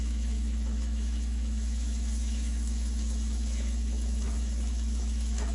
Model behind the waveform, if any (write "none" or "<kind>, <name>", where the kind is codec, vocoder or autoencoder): autoencoder, DAC-VAE